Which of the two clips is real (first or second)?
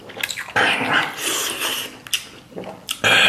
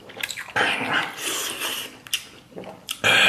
first